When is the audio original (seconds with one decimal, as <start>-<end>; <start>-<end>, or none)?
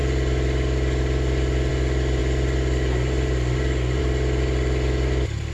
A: 0.0-5.5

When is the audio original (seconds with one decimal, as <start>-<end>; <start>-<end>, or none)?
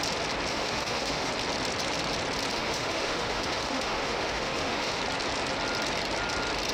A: 0.0-0.5; 1.3-2.5; 5.0-6.7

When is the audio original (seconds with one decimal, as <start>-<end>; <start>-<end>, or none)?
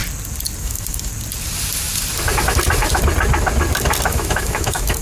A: 0.0-0.6; 1.1-4.1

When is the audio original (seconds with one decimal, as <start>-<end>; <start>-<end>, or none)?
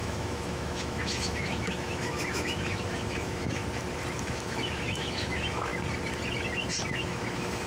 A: 3.6-4.2; 5.7-7.0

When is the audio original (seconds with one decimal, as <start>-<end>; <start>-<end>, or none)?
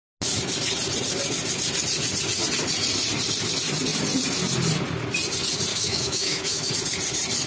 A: 0.0-5.7; 6.7-7.5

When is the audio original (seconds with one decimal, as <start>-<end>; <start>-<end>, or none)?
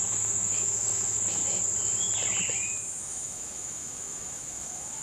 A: 1.4-3.0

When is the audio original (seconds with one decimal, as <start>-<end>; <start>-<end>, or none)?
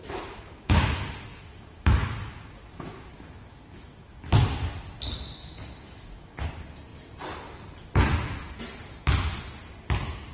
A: 0.9-1.3; 4.4-5.4; 6.5-10.3